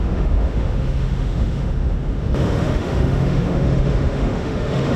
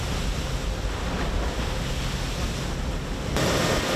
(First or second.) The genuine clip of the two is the second